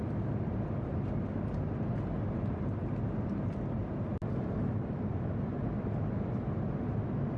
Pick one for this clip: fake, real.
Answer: real